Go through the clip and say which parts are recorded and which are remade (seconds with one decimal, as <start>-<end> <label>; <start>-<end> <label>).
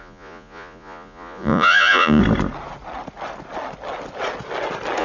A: 0.0-2.2 remade; 2.2-5.0 recorded